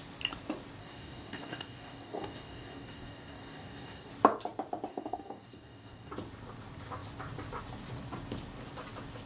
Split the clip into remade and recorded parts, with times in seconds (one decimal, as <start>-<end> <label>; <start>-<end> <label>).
0.0-0.8 recorded; 0.8-4.1 remade; 4.1-4.9 recorded; 4.9-6.1 remade; 6.1-9.3 recorded